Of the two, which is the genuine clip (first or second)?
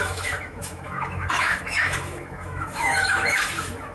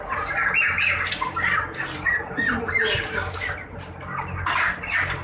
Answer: second